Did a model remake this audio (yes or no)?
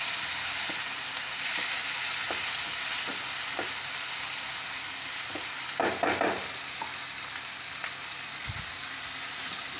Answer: no